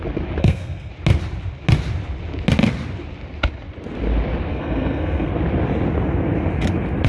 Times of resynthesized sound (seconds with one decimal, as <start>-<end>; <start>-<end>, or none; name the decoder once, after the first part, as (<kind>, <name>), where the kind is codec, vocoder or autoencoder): 0.4-0.9 (codec, SNAC); 4.5-5.3